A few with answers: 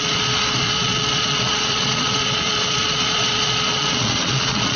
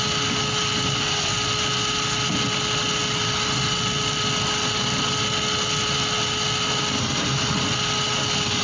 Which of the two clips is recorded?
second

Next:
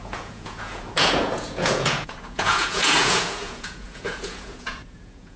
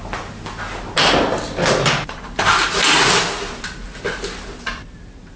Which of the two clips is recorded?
second